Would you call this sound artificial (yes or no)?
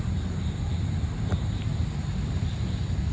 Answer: no